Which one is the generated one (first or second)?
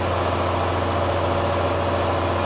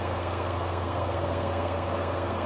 second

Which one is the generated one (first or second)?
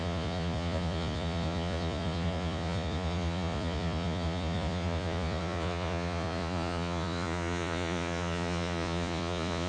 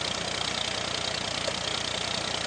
first